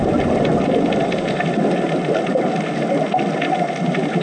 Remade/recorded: recorded